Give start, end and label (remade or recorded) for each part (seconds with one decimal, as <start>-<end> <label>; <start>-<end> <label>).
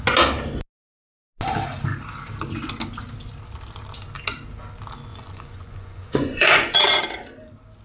0.0-5.1 recorded; 5.1-7.0 remade; 7.0-7.8 recorded